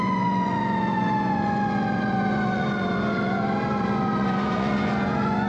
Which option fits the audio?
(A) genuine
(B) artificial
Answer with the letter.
B